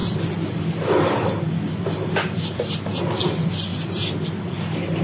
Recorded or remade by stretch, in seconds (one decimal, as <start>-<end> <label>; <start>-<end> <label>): 0.0-5.0 recorded